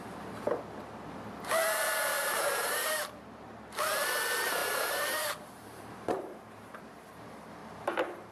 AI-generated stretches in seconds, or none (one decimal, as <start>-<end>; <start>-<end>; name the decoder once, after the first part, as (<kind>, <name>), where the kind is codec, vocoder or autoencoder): 2.1-3.0 (vocoder, BigVGAN v2); 4.6-6.8; 7.6-8.3